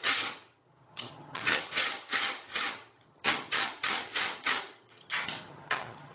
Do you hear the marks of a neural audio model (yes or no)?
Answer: yes